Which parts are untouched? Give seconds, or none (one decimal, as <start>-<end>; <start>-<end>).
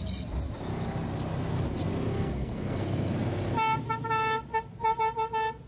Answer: 0.0-2.1; 3.1-5.7